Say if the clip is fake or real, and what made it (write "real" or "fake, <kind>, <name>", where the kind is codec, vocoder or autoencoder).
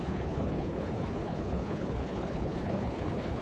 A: fake, codec, HILCodec